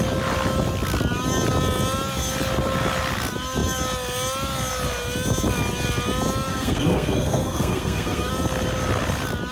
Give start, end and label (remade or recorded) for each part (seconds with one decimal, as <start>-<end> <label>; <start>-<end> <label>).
0.0-6.5 recorded; 6.5-8.3 remade; 8.3-9.5 recorded

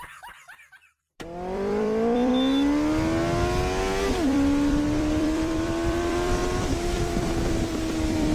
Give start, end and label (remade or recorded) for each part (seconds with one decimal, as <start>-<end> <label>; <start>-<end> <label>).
0.0-2.3 remade; 2.3-4.0 recorded; 4.0-8.3 remade

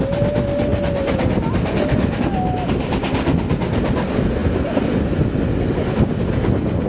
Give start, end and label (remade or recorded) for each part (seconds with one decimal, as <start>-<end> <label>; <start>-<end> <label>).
0.0-6.9 recorded

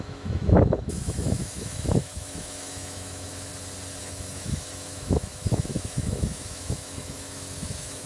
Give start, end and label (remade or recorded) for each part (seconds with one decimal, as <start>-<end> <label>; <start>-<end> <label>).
0.0-3.5 remade; 3.5-4.0 recorded; 4.0-8.1 remade

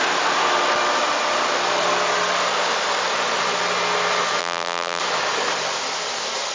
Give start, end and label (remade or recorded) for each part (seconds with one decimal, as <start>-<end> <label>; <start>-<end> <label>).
0.0-4.4 recorded; 4.4-5.0 remade; 5.0-6.5 recorded

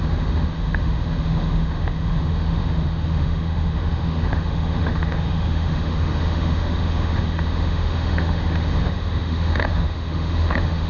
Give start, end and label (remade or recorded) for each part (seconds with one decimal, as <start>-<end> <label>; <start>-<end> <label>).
0.0-10.9 remade

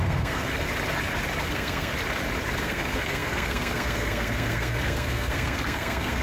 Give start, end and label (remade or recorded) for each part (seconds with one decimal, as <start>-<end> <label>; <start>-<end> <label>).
0.0-0.5 remade; 0.5-1.5 recorded; 1.5-1.9 remade; 1.9-2.6 recorded; 2.6-6.2 remade

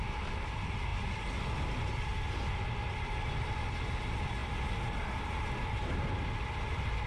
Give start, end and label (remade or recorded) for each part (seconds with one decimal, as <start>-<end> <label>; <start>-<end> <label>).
0.0-7.1 recorded